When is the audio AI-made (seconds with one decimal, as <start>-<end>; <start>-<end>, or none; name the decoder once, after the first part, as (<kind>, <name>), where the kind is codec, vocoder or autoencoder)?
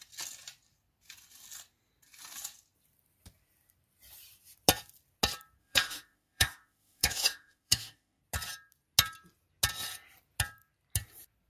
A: 5.6-8.2 (autoencoder, DAC-VAE)